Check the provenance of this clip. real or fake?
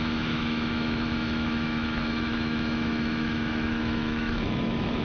fake